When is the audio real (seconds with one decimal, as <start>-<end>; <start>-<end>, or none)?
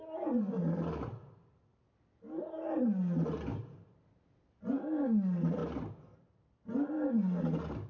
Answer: 0.0-7.9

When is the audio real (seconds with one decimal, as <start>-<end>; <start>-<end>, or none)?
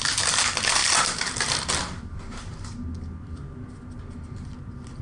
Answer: 0.0-5.0